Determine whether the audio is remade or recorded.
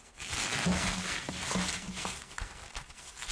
remade